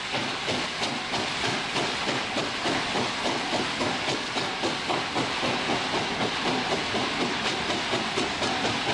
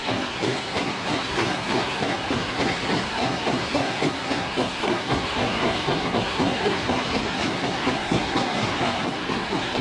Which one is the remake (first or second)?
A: second